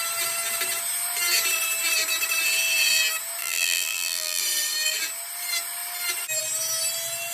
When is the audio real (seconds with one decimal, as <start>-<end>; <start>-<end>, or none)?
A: 0.0-3.4; 4.4-7.3